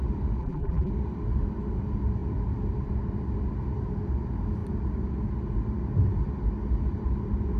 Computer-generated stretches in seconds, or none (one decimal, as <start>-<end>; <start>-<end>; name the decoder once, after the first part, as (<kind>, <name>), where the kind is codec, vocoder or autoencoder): 0.4-0.9 (vocoder, BigVGAN v2)